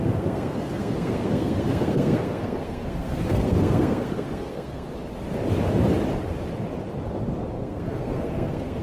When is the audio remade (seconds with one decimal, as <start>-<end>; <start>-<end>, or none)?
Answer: 0.0-4.9; 7.5-8.8